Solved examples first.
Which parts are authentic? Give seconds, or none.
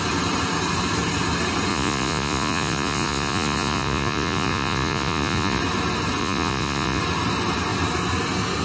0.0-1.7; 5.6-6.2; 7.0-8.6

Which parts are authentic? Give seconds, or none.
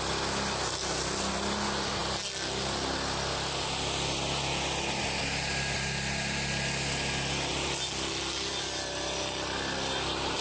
0.0-10.4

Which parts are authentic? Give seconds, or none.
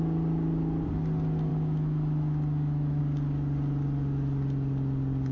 0.0-1.5; 3.0-5.3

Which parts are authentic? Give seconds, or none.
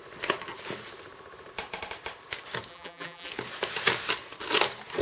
0.0-2.7; 3.3-5.0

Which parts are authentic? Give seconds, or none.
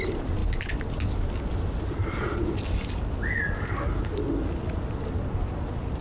0.0-6.0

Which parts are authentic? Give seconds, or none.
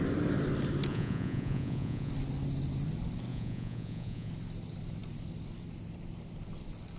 0.0-0.9; 2.1-3.3; 4.3-7.0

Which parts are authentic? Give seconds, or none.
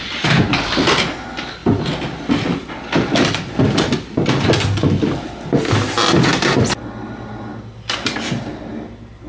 0.0-9.3